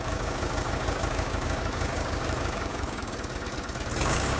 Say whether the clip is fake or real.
fake